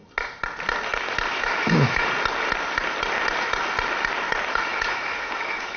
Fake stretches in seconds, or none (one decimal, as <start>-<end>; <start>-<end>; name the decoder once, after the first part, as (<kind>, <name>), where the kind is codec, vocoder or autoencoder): 1.3-2.1 (autoencoder, DAC-VAE); 4.5-5.8